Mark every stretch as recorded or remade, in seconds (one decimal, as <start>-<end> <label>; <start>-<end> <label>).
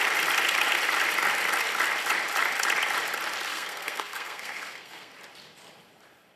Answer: 0.0-3.5 recorded; 3.5-5.1 remade; 5.1-6.4 recorded